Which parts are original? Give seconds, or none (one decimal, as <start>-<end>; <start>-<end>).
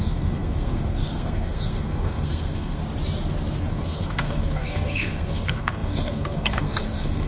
2.8-3.7